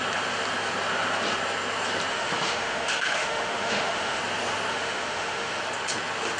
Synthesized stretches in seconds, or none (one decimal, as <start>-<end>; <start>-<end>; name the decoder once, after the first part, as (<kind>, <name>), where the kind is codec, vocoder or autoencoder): 2.1-4.2 (autoencoder, DAC-VAE); 4.7-5.6

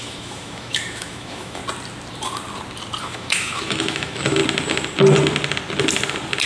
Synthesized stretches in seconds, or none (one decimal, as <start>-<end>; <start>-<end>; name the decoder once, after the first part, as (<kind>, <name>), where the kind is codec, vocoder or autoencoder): 0.0-1.6 (autoencoder, DAC-VAE); 3.0-4.4

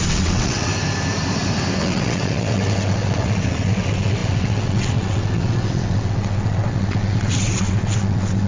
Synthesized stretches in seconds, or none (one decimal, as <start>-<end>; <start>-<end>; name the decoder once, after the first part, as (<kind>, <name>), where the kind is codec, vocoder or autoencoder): 0.0-0.7 (vocoder, WaveNeXt); 1.8-8.5

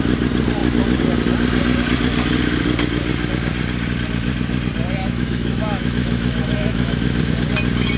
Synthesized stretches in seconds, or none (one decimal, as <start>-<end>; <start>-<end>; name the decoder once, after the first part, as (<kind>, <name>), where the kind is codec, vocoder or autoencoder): 5.0-7.3 (autoencoder, DAC-VAE)